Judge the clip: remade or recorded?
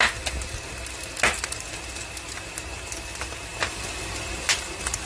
recorded